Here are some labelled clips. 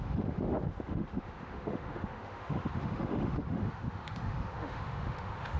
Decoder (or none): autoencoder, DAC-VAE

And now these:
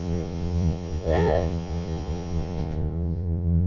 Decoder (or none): vocoder, Vocos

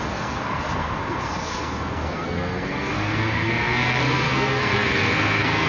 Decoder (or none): codec, SNAC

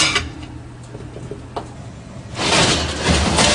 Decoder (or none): none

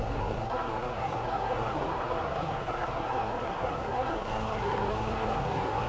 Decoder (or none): codec, SNAC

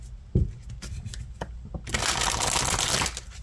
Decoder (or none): none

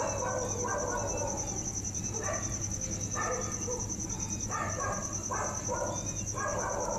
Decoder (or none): none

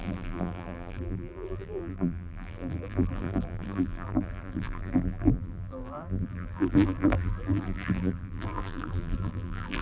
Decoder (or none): vocoder, BigVGAN v2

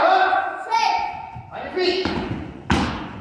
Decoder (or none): vocoder, Vocos